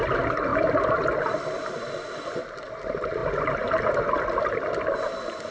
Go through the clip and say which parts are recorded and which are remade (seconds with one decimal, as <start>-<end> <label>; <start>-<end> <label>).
0.0-5.5 recorded